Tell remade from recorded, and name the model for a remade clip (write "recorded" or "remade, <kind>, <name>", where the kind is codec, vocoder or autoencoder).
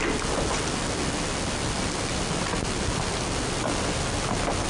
recorded